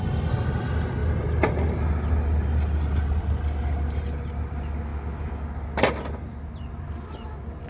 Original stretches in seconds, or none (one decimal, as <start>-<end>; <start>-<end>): 0.0-7.7